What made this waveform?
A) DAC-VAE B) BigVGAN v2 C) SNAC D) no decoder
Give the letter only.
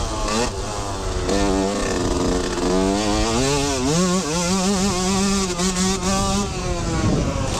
D